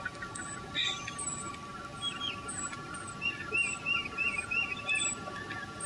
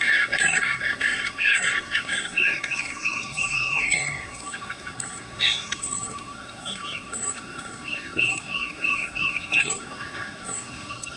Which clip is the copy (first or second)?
second